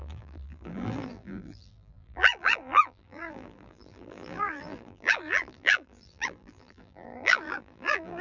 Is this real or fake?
fake